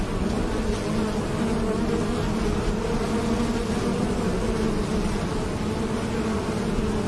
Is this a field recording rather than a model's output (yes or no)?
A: yes